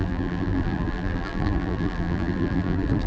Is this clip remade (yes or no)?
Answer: yes